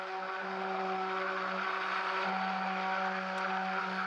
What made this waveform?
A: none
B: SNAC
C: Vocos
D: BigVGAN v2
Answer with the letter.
A